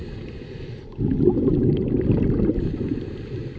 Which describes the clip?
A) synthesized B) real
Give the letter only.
B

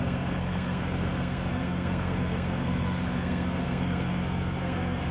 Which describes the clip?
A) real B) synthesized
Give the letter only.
B